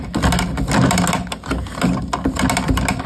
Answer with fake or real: real